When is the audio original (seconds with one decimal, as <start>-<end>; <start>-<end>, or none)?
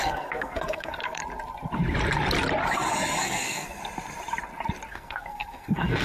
1.2-3.2; 3.8-4.9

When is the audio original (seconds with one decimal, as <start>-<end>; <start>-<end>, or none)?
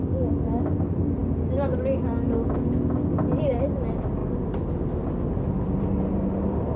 0.0-6.8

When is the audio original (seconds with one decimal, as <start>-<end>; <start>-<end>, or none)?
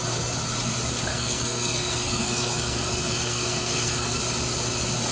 0.0-1.1; 4.2-5.1